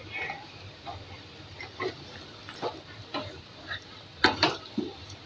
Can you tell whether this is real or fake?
fake